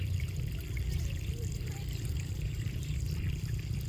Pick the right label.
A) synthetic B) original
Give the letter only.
A